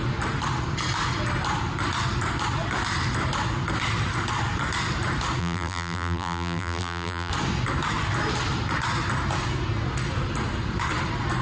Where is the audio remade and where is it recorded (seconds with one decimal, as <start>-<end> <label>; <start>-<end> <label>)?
0.0-5.4 recorded; 5.4-7.3 remade; 7.3-11.4 recorded